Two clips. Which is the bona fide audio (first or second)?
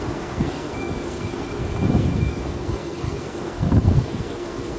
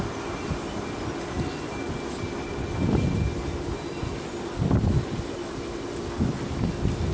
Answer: second